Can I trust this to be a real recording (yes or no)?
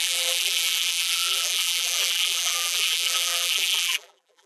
no